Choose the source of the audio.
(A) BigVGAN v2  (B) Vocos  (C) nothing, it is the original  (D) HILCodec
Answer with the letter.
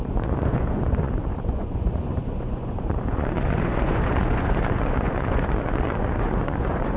B